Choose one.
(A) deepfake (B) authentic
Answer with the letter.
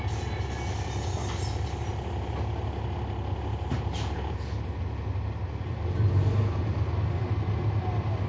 B